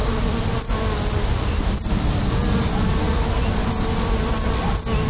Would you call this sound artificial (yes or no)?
no